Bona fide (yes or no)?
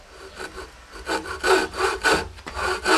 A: yes